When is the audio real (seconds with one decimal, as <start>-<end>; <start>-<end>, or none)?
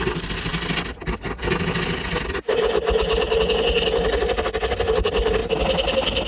0.0-6.3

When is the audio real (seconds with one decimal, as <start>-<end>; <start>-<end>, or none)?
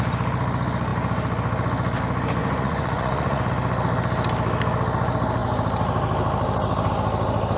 0.0-2.4; 3.5-7.6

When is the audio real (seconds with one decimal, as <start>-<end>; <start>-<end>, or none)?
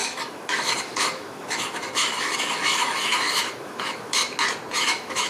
4.2-4.8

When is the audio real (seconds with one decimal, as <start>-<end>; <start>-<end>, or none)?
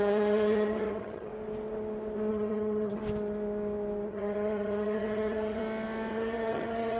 1.3-2.3; 3.0-4.1; 5.6-6.1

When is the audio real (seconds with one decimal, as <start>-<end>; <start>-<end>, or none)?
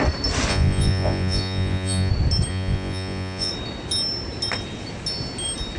0.0-0.5; 2.1-2.5; 3.5-5.8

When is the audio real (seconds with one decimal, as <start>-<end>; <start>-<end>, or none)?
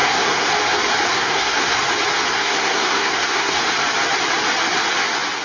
0.5-1.1; 1.8-2.3; 3.6-5.4